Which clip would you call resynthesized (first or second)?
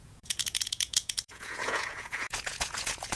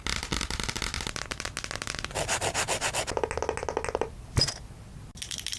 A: first